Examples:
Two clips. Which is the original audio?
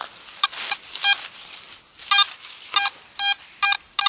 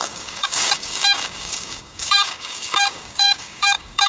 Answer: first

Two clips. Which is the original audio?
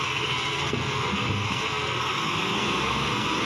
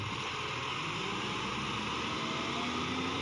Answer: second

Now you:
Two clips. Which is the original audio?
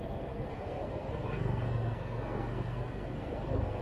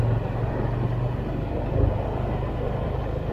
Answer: second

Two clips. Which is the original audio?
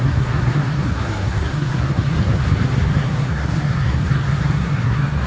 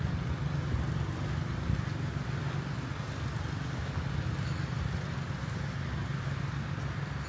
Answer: second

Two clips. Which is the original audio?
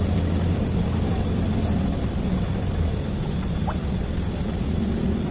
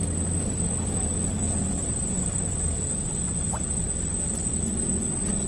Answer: second